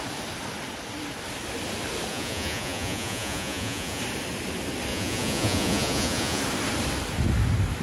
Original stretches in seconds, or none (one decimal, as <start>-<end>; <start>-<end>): 0.0-2.1; 4.0-4.9; 6.4-7.8